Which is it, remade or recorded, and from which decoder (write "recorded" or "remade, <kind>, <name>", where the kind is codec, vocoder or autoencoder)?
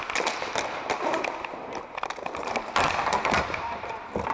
recorded